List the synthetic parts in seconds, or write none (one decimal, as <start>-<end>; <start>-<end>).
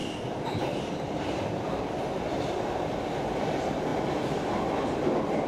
0.0-1.5; 3.9-5.1